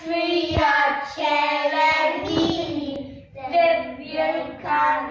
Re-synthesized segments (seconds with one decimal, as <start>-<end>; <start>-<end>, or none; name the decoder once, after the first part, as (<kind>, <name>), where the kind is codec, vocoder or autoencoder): 3.7-4.2 (autoencoder, DAC-VAE)